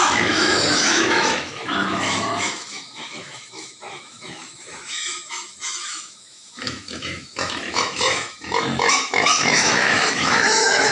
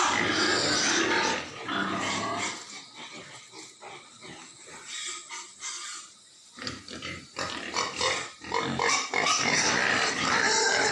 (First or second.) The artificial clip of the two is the first